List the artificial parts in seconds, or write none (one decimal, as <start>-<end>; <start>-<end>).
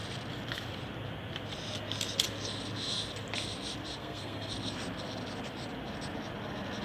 4.0-4.5